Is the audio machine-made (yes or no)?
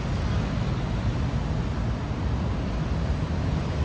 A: no